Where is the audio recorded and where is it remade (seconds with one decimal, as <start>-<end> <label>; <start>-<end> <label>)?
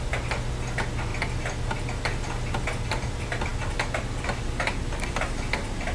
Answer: 0.0-5.9 recorded